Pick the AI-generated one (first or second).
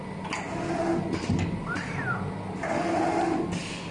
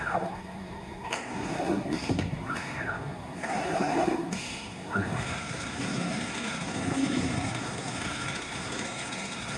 second